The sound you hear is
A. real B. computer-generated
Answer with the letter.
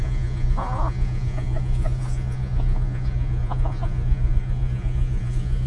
B